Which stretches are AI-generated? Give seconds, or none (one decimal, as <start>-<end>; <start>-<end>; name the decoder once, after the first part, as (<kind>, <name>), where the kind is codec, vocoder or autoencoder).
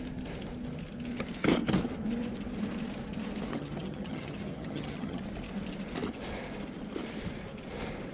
3.5-5.2 (vocoder, HiFi-GAN)